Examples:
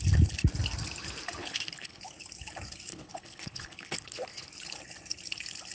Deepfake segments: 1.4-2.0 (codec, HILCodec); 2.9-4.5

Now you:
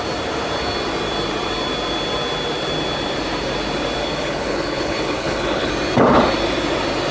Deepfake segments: 4.0-5.7 (codec, HILCodec)

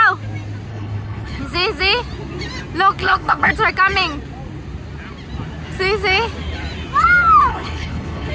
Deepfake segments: 0.7-1.4 (codec, HILCodec); 3.0-3.5; 7.5-8.3